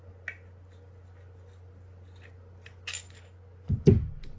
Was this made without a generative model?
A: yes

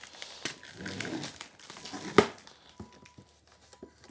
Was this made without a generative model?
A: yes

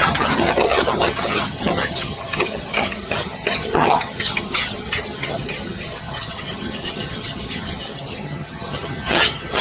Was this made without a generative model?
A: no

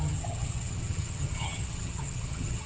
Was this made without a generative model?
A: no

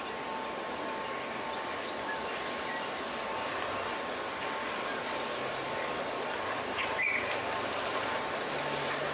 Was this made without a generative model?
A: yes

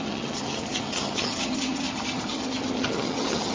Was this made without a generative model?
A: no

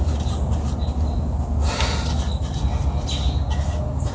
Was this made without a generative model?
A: yes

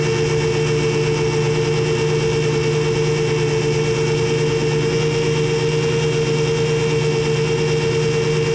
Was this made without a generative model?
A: yes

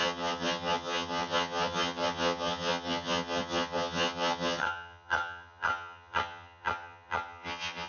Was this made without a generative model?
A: no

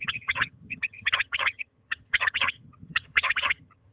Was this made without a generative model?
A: no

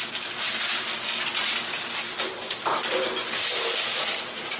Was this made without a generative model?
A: yes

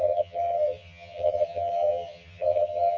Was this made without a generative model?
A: no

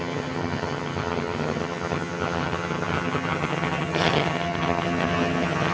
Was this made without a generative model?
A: no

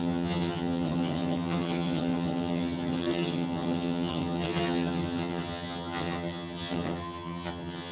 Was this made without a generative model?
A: no